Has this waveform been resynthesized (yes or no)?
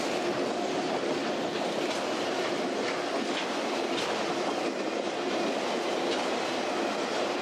no